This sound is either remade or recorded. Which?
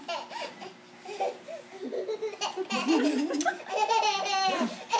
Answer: recorded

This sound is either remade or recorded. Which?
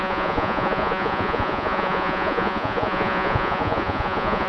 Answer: remade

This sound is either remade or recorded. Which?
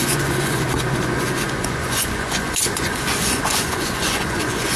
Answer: remade